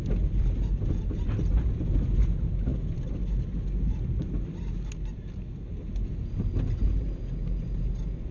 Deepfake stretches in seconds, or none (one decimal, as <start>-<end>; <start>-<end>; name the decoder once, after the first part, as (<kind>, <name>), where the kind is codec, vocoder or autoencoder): none

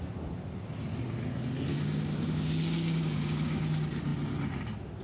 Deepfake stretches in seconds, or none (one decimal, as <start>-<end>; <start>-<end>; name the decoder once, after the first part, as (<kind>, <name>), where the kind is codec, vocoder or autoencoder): 1.7-3.6 (codec, DAC)